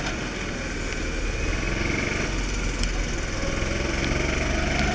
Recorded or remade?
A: recorded